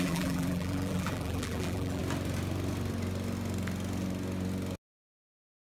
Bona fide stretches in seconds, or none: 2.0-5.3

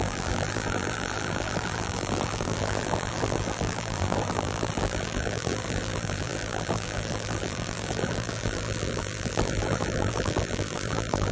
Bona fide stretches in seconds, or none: none

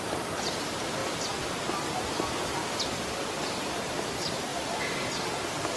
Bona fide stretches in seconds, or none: 1.0-2.8

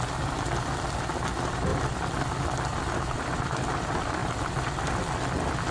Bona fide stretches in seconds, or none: 0.0-1.7; 2.7-4.2; 4.8-5.7